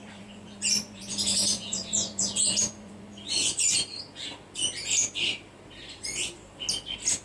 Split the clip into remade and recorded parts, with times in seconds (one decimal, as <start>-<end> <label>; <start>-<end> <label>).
0.0-4.0 remade; 4.0-5.8 recorded; 5.8-6.4 remade; 6.4-7.2 recorded